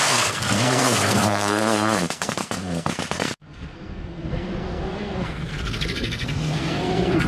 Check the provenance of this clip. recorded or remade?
remade